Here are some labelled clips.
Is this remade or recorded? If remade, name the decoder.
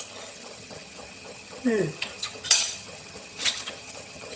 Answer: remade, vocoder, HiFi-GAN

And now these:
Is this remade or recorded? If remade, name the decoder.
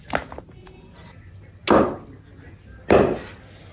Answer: recorded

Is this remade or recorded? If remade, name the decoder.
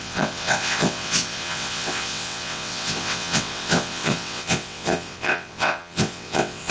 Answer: remade, vocoder, WaveNeXt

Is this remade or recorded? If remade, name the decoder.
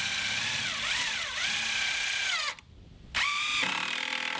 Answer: recorded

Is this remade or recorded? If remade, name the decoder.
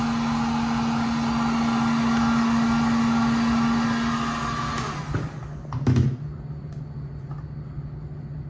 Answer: recorded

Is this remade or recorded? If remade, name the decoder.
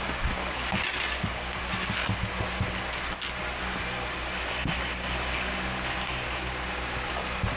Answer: recorded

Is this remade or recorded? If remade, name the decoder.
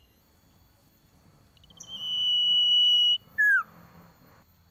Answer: recorded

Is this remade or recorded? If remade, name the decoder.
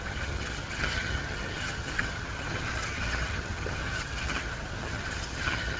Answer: remade, vocoder, HiFi-GAN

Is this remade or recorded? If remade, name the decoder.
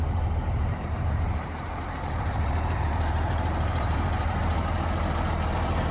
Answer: remade, vocoder, BigVGAN v2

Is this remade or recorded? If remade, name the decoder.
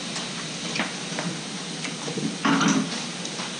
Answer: recorded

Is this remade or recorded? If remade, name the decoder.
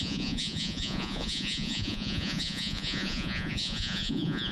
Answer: remade, vocoder, Vocos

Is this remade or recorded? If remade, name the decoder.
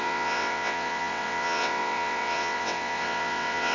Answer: remade, vocoder, WaveNeXt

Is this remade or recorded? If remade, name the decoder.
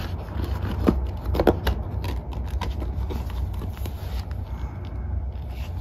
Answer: recorded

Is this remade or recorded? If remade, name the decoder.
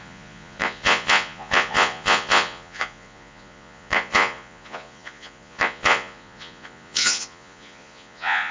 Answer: remade, vocoder, Vocos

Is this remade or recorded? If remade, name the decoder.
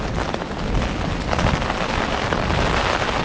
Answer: recorded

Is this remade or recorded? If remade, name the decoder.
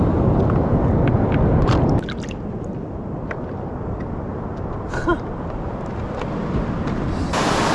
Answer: recorded